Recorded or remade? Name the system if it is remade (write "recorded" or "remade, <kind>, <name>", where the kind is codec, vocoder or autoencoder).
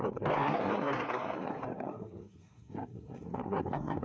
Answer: remade, codec, SNAC